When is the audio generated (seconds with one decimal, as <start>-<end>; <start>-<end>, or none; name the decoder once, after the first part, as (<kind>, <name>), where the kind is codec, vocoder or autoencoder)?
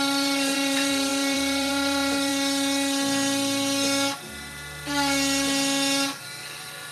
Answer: 0.0-2.3 (vocoder, BigVGAN v2); 6.2-6.9